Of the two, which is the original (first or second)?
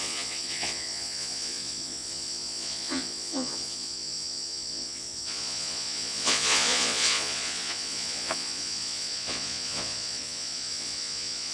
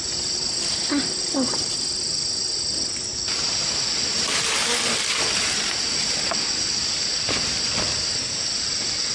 second